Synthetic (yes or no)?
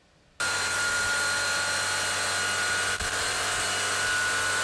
no